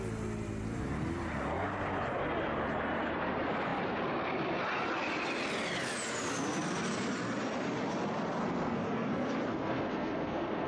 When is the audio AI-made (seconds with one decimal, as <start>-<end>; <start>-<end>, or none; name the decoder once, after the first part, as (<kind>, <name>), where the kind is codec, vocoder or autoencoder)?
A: 8.4-9.1 (codec, SNAC); 9.5-10.7